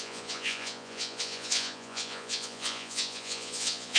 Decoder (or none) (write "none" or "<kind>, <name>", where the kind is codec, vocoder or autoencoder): vocoder, Vocos